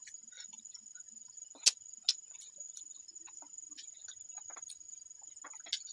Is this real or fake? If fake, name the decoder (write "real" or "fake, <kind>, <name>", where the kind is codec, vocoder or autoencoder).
real